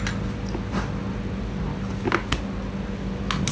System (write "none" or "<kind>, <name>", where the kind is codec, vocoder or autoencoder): none